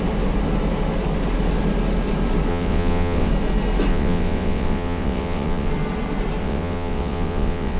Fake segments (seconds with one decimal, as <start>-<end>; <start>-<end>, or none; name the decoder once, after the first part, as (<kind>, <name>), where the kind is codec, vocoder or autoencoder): 2.5-3.3 (vocoder, WaveNeXt); 3.9-5.7; 6.4-7.8